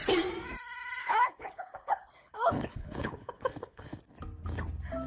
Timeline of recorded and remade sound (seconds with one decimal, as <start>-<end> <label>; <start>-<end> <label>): 0.0-1.0 recorded; 1.0-4.0 remade; 4.0-5.1 recorded